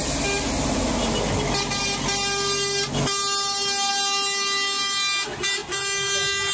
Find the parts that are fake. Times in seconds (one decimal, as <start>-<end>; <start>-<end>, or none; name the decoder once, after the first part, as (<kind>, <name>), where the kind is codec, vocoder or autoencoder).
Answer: none